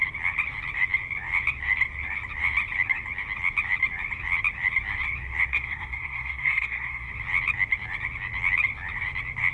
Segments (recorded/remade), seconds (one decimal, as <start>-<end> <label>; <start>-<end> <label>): 0.0-5.5 recorded; 5.5-7.1 remade; 7.1-9.5 recorded